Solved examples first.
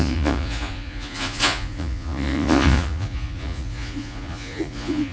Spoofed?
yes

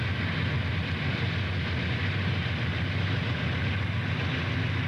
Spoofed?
no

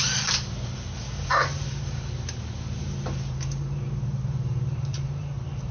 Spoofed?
yes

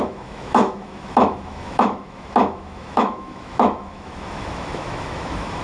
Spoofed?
yes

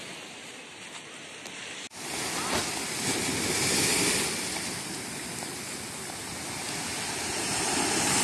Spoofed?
no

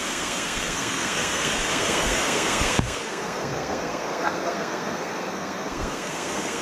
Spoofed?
yes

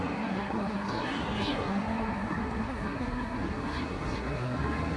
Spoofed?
yes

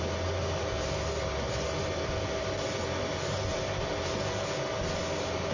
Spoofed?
no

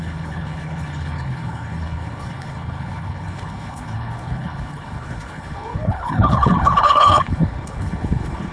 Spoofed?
yes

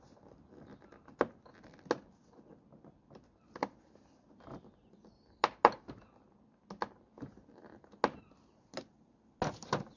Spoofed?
no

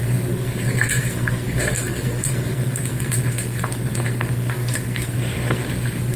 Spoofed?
yes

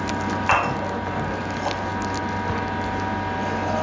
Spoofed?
no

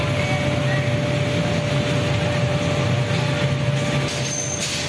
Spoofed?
no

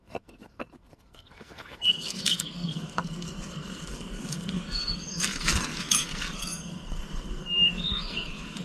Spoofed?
yes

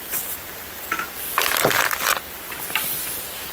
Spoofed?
no